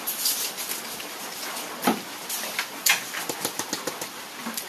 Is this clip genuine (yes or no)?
yes